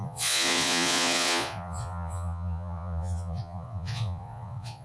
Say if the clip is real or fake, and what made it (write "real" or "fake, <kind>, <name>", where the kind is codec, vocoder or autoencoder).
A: fake, vocoder, Vocos